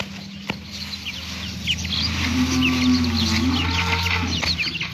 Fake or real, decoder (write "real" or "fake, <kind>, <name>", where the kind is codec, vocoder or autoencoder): real